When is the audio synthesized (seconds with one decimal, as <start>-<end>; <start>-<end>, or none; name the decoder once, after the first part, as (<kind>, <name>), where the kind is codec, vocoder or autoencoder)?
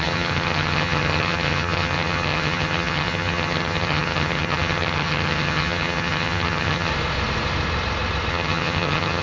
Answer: 0.0-6.9 (vocoder, HiFi-GAN); 8.3-9.2